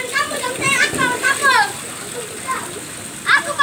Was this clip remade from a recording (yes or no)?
no